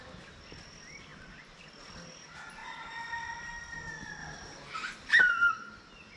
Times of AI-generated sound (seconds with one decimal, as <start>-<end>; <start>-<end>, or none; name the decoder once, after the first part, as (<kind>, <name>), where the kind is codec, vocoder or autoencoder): 1.1-1.6 (vocoder, BigVGAN v2); 2.6-3.4; 4.2-5.2